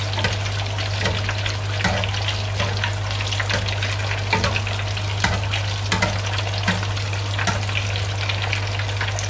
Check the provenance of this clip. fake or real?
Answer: real